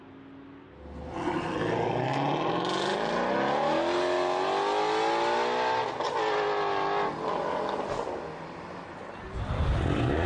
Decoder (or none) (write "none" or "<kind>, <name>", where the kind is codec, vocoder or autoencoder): none